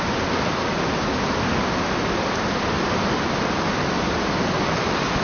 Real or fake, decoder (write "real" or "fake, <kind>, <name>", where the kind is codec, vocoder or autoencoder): real